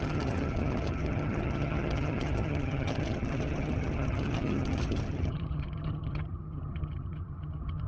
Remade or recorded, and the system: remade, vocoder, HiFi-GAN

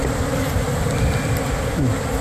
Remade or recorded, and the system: recorded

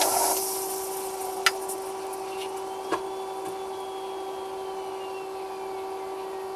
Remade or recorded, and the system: recorded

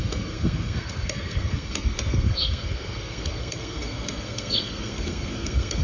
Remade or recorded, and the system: remade, codec, SNAC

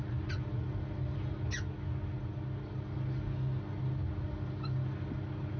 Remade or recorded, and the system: recorded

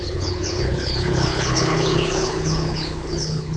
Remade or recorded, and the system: remade, codec, HILCodec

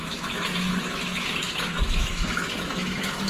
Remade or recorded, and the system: remade, autoencoder, DAC-VAE